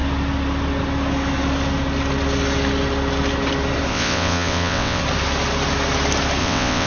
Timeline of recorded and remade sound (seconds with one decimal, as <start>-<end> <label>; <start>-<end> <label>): 0.0-3.9 recorded; 3.9-5.0 remade; 5.0-6.4 recorded; 6.4-6.9 remade